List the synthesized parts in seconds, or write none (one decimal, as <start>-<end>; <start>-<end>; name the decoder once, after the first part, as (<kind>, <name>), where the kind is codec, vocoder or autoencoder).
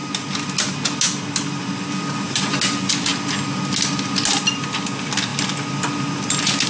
none